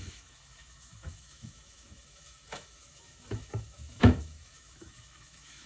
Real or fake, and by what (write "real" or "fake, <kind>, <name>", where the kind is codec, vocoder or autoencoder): fake, autoencoder, DAC-VAE